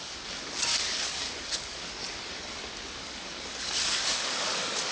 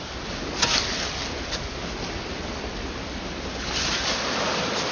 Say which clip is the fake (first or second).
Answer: first